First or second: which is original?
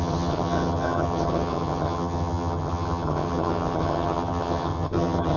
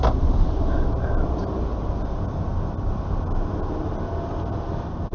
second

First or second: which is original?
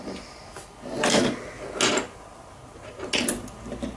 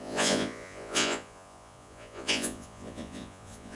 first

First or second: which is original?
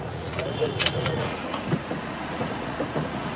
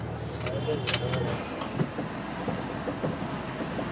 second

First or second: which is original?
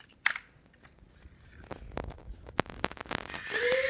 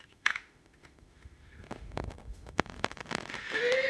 first